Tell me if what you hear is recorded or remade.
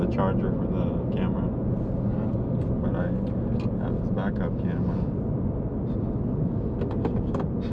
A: recorded